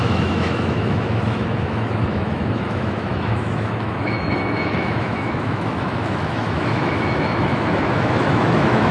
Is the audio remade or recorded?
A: remade